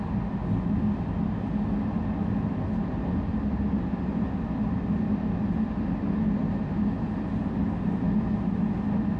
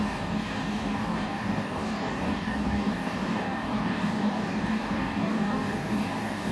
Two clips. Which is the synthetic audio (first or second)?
second